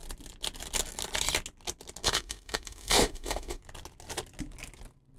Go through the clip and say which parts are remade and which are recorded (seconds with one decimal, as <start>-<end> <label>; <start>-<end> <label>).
0.0-2.0 recorded; 2.0-3.6 remade; 3.6-5.2 recorded

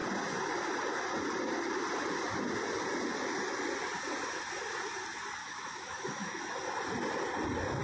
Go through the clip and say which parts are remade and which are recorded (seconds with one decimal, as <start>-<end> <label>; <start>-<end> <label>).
0.0-5.4 recorded; 5.4-6.4 remade; 6.4-7.8 recorded

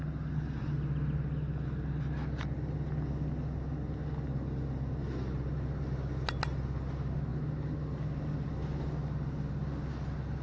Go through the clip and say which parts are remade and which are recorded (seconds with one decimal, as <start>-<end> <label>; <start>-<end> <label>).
0.0-10.4 recorded

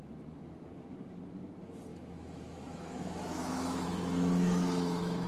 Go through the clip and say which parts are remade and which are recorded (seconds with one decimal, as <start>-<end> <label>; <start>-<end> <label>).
0.0-1.9 recorded; 1.9-5.3 remade

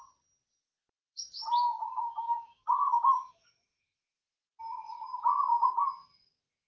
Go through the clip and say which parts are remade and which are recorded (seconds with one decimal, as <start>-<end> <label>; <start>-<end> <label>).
0.0-0.6 recorded; 0.6-4.6 remade; 4.6-5.5 recorded; 5.5-6.7 remade

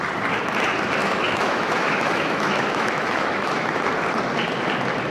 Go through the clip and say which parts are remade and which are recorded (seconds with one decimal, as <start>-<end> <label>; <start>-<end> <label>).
0.0-1.0 recorded; 1.0-3.9 remade; 3.9-5.1 recorded

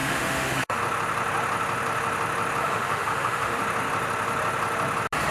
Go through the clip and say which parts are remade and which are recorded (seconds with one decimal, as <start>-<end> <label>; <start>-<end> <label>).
0.0-0.8 remade; 0.8-2.6 recorded; 2.6-3.6 remade; 3.6-5.3 recorded